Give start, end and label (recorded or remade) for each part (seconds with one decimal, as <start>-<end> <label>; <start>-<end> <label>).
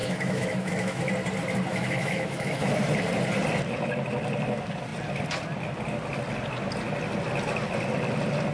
0.0-1.1 remade; 1.1-1.7 recorded; 1.7-2.7 remade; 2.7-8.5 recorded